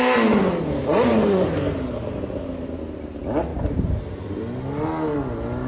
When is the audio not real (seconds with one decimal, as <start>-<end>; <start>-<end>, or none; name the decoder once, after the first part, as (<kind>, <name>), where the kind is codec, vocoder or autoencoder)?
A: 0.6-1.7 (vocoder, BigVGAN v2); 3.5-4.4